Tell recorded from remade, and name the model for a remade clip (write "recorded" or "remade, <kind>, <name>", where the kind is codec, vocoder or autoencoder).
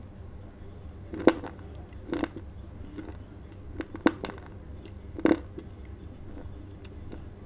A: recorded